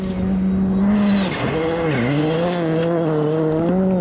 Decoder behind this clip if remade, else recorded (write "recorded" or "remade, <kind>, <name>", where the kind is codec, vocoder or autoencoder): recorded